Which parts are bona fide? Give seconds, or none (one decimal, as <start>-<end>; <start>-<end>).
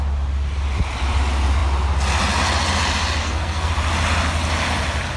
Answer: 0.0-3.2; 3.7-5.2